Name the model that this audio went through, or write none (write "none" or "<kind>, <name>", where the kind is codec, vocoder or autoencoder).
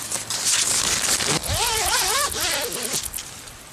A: none